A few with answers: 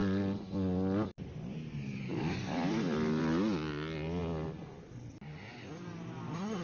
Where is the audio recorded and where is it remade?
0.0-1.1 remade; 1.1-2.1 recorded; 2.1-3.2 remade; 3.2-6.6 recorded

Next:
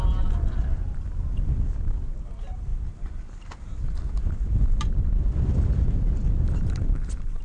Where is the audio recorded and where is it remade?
0.0-2.7 recorded; 2.7-7.4 remade

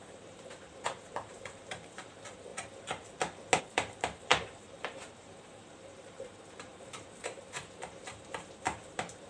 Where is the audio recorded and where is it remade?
0.0-2.5 remade; 2.5-3.6 recorded; 3.6-9.3 remade